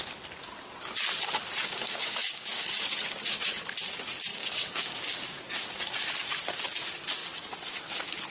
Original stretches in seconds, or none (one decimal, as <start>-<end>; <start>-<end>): 0.0-1.6; 2.5-4.3; 5.5-8.3

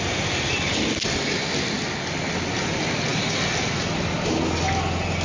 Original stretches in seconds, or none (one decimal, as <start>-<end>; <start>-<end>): 0.0-5.2

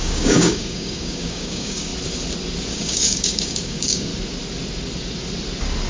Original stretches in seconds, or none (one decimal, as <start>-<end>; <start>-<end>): 1.9-2.7; 4.1-5.9

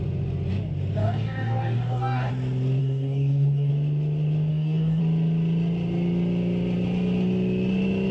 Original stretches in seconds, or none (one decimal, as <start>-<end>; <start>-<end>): 0.0-1.0; 2.3-2.8; 3.7-4.5; 5.0-8.1